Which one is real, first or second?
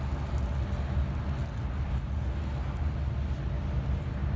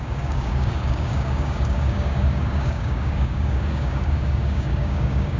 first